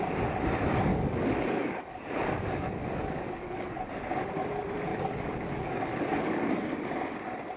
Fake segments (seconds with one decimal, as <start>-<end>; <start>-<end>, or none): 0.9-3.9; 4.9-6.6